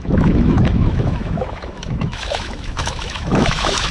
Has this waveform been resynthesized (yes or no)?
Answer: yes